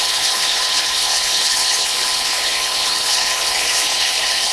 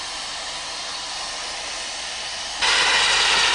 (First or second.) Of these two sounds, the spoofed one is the first